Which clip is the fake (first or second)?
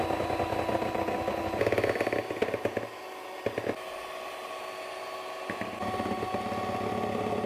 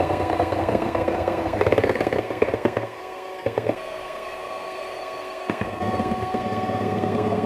second